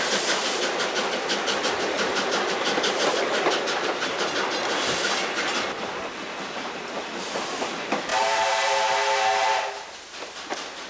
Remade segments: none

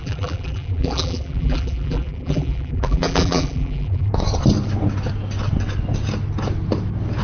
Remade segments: 0.0-4.1

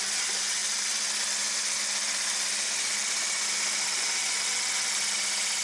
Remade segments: none